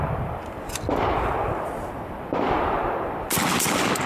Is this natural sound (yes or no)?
yes